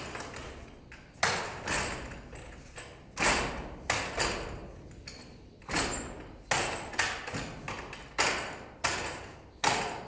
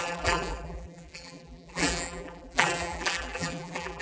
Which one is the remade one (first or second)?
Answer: second